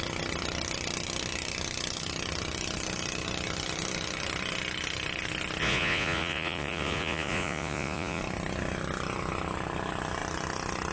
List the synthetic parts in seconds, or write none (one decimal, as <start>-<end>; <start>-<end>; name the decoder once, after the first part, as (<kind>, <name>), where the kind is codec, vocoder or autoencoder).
5.6-8.2 (vocoder, Vocos)